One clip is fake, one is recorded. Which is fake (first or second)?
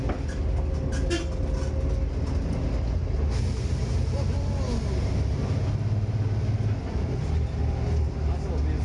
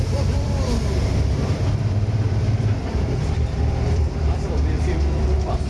second